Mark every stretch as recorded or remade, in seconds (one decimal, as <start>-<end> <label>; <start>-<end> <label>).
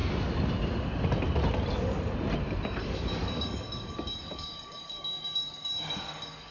0.0-2.8 recorded; 2.8-6.5 remade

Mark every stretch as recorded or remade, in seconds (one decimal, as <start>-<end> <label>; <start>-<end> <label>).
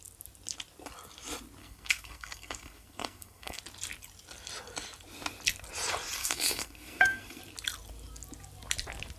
0.0-1.6 recorded; 1.6-3.6 remade; 3.6-6.2 recorded; 6.2-7.4 remade; 7.4-9.2 recorded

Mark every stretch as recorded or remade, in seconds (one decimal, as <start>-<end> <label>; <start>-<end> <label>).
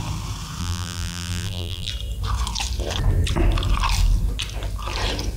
0.0-0.6 recorded; 0.6-1.9 remade; 1.9-5.4 recorded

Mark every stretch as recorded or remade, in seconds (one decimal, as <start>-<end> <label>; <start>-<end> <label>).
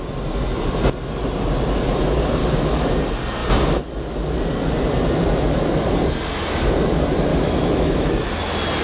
0.0-2.4 recorded; 2.4-2.9 remade; 2.9-7.3 recorded; 7.3-8.1 remade; 8.1-8.8 recorded